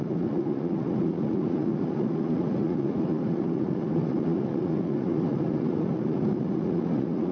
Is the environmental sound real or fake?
fake